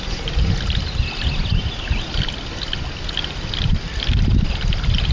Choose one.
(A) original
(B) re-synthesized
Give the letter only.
A